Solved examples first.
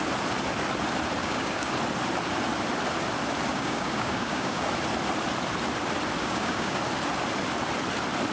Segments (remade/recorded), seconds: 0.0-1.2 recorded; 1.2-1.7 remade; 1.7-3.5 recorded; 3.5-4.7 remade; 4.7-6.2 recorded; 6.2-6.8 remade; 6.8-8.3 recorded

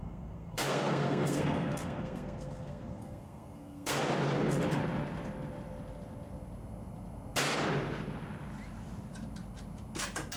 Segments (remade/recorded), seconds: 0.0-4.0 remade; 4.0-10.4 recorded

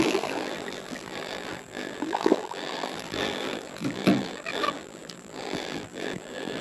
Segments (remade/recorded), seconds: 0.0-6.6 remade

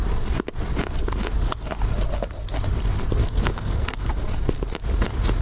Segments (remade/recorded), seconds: 0.0-3.2 recorded; 3.2-4.1 remade; 4.1-5.4 recorded

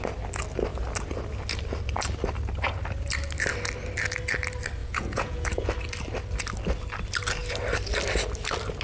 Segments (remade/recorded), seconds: 0.0-4.8 recorded; 4.8-5.7 remade; 5.7-8.8 recorded